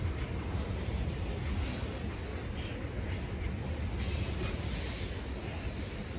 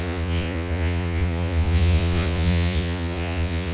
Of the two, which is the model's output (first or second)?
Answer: second